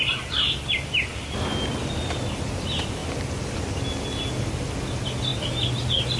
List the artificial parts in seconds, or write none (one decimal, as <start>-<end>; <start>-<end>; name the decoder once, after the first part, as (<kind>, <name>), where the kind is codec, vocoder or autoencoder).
5.3-5.8 (vocoder, BigVGAN v2)